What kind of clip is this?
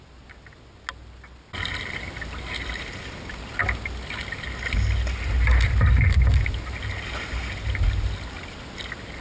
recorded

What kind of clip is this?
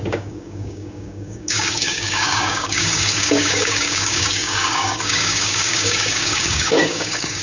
remade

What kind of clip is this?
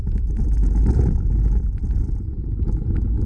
recorded